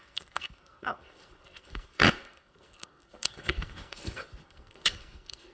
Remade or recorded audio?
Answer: remade